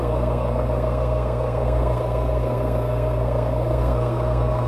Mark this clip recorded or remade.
remade